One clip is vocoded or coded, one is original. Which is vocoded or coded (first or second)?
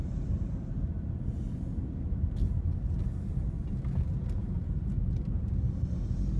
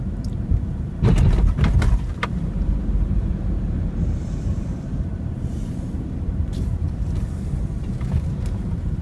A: second